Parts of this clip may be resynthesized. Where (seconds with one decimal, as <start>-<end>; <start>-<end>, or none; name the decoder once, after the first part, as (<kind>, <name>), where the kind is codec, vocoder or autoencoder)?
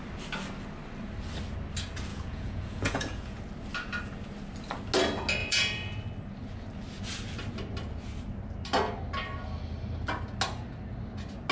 2.1-3.4 (vocoder, Vocos); 5.4-6.0